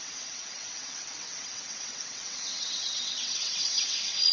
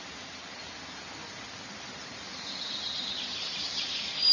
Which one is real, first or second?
second